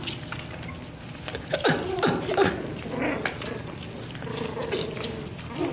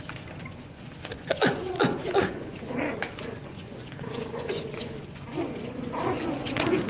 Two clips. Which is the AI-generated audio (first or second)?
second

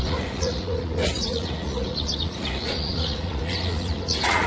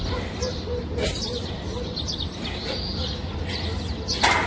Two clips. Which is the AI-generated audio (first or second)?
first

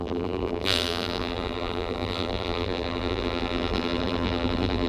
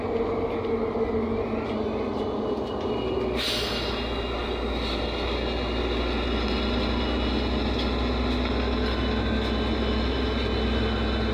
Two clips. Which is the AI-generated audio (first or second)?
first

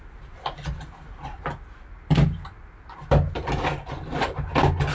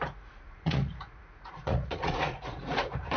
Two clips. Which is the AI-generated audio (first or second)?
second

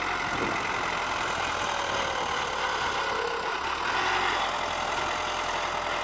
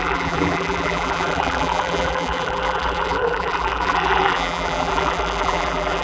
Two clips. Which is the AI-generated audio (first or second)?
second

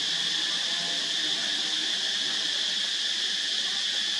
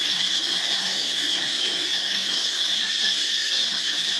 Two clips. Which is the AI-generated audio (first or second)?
second